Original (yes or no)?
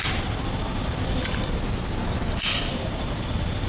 yes